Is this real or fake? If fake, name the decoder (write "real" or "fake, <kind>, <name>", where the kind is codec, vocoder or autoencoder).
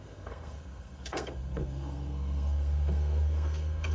fake, codec, SNAC